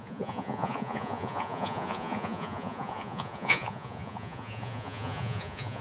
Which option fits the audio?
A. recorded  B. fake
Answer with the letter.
B